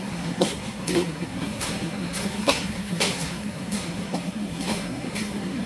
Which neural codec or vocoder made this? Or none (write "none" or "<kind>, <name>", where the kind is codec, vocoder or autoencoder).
codec, SNAC